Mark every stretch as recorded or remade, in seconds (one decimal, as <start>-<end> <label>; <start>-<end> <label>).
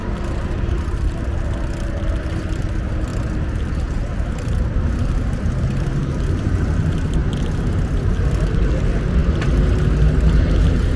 0.0-11.0 recorded